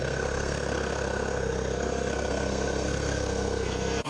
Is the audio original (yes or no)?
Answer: no